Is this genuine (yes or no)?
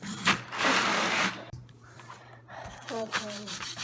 no